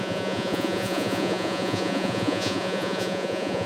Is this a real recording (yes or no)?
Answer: no